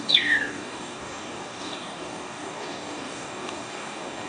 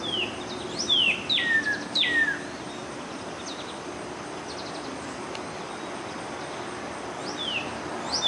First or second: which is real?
second